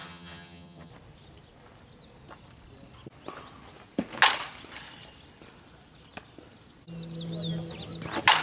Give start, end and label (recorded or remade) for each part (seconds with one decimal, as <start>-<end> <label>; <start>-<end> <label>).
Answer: 0.0-0.9 remade; 0.9-8.4 recorded